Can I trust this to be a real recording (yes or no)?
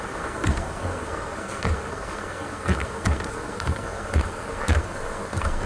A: no